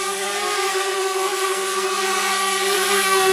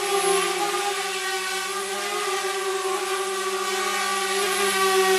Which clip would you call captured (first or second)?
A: second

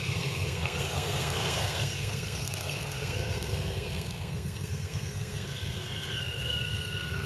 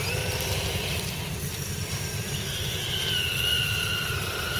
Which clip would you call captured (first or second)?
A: second